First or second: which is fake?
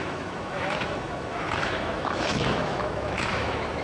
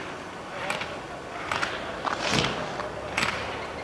first